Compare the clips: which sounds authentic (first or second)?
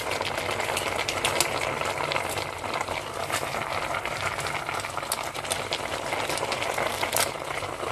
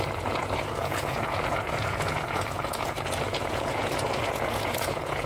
first